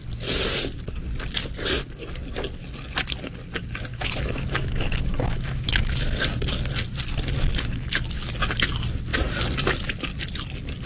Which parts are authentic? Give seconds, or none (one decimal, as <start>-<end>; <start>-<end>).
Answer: 0.0-3.9; 5.9-7.5; 8.1-10.9